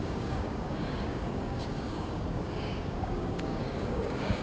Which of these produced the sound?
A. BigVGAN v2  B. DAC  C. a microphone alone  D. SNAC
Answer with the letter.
B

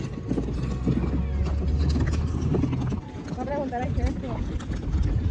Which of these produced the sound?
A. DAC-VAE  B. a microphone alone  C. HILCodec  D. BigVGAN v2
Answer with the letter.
B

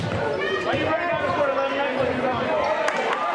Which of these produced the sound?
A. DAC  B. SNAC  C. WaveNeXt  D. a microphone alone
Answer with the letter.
D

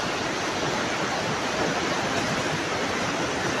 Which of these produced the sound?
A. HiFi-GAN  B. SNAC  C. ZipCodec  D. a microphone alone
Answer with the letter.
D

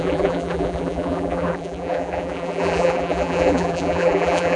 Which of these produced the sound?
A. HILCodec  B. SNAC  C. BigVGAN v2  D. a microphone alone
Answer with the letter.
C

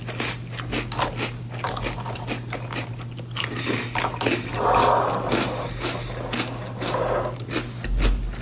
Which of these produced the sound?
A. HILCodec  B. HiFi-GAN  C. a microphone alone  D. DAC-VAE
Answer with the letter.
C